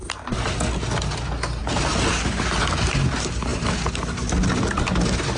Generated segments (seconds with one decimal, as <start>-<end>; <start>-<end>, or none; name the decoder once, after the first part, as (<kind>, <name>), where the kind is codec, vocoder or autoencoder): none